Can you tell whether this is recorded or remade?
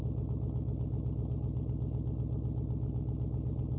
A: recorded